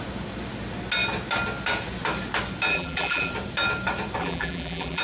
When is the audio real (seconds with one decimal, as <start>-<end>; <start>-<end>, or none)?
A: 0.0-2.7; 3.3-4.2